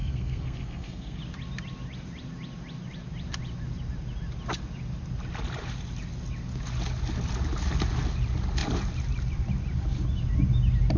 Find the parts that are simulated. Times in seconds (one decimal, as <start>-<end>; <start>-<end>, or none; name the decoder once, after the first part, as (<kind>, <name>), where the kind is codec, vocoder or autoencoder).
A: 0.0-1.2 (codec, SNAC)